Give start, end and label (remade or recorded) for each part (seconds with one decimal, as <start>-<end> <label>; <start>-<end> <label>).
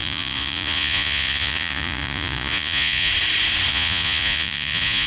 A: 0.0-3.1 remade; 3.1-3.7 recorded; 3.7-5.1 remade